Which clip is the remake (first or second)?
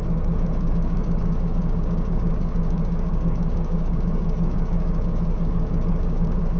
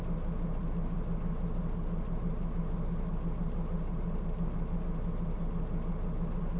first